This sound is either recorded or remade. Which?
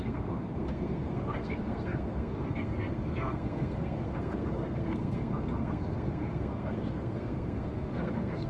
remade